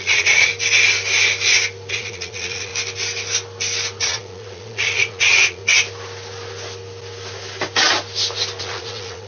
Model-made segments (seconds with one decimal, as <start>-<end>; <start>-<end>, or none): 0.0-0.5; 1.9-2.7; 4.0-5.6; 8.6-9.3